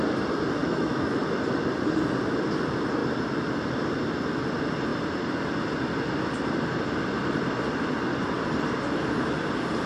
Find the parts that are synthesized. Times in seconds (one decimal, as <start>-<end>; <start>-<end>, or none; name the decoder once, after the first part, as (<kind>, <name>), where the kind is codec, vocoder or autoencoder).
0.6-1.2 (autoencoder, DAC-VAE)